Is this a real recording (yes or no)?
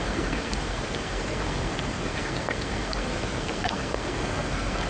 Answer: no